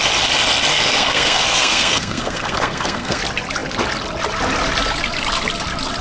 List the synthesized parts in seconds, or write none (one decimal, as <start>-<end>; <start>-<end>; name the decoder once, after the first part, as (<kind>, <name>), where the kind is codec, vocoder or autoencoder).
0.7-3.2 (codec, SNAC)

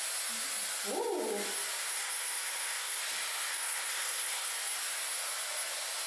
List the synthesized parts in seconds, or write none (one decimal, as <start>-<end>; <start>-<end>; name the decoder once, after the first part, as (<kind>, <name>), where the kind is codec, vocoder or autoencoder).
1.9-3.0 (codec, SNAC); 3.5-4.5

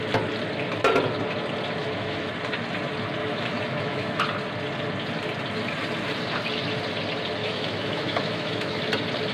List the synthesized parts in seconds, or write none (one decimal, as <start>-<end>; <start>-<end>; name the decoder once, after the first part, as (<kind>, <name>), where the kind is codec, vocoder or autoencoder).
1.8-2.3 (autoencoder, DAC-VAE); 3.2-4.2; 7.4-8.8

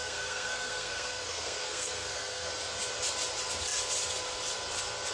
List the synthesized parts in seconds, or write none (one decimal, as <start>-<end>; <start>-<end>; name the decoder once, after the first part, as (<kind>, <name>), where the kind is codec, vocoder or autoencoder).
0.0-2.5 (codec, SNAC)

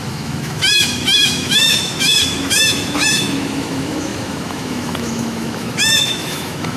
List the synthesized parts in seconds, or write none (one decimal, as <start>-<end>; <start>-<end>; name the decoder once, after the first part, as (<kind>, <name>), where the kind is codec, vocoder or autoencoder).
0.0-6.8 (autoencoder, DAC-VAE)